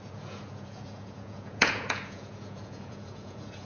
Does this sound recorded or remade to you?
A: remade